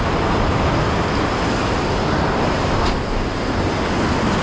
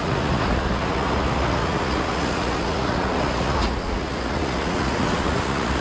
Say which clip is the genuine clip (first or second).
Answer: first